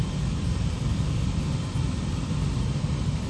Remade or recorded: remade